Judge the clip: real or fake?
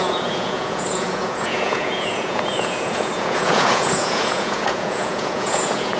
fake